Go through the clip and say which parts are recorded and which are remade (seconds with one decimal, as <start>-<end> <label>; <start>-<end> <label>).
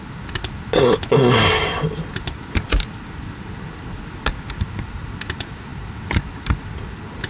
0.0-7.3 recorded